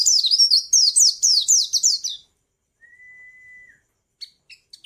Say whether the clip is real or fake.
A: real